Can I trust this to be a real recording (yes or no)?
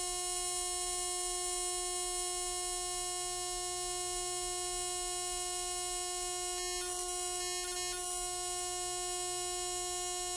yes